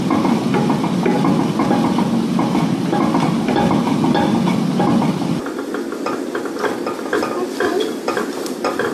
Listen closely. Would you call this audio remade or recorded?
recorded